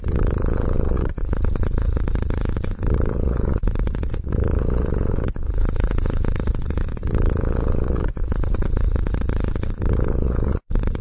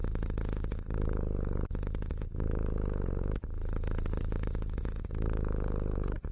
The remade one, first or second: first